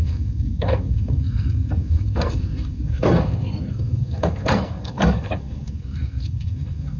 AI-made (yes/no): yes